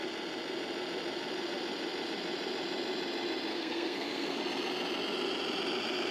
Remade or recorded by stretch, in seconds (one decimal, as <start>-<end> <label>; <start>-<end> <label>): 0.0-3.5 recorded; 3.5-4.4 remade; 4.4-6.1 recorded